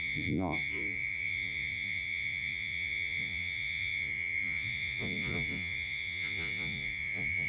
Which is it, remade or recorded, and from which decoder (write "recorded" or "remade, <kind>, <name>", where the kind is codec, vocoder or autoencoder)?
remade, vocoder, Vocos